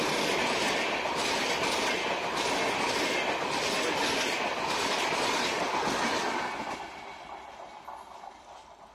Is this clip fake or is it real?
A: real